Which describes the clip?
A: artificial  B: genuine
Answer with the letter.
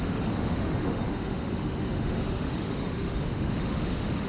A